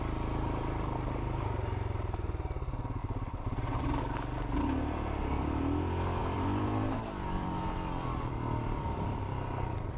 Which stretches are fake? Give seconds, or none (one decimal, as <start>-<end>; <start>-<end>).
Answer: 3.0-4.0; 6.2-9.2